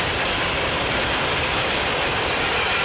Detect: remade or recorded recorded